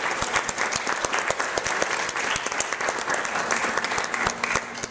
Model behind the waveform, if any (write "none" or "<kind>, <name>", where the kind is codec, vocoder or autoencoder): none